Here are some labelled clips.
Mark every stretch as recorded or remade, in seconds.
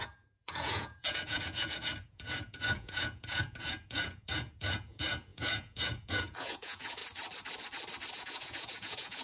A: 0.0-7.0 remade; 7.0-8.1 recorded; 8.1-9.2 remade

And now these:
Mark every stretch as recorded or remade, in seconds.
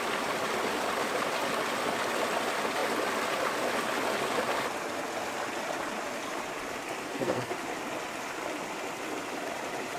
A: 0.0-7.0 recorded; 7.0-7.5 remade; 7.5-10.0 recorded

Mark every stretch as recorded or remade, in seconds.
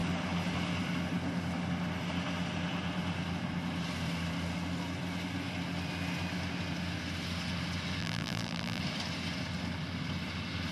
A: 0.0-8.0 recorded; 8.0-8.8 remade; 8.8-10.7 recorded